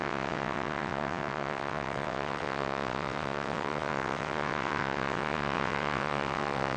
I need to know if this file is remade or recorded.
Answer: remade